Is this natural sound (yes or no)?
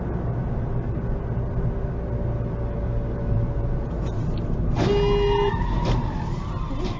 yes